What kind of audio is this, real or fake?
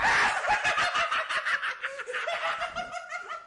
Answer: real